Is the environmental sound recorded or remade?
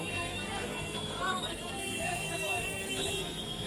remade